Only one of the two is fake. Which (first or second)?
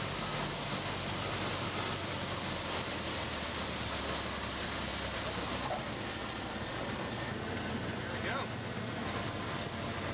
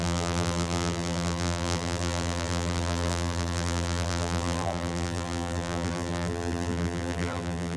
second